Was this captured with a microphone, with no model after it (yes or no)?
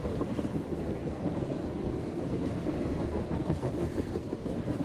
no